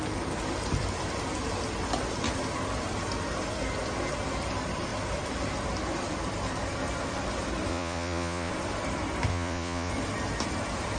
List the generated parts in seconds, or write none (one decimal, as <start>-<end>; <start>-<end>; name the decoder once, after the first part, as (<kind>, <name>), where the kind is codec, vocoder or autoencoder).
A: 7.7-8.5 (vocoder, Vocos); 9.3-9.9